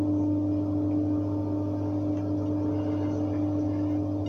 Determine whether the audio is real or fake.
real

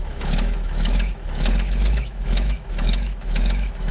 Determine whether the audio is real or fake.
fake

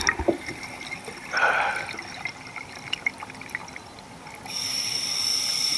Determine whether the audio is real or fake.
real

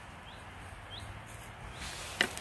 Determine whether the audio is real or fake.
real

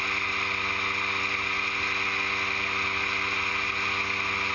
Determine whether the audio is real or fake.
real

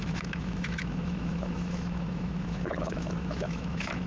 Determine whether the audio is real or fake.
fake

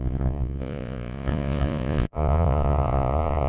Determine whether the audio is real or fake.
fake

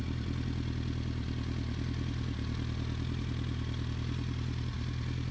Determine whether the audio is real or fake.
real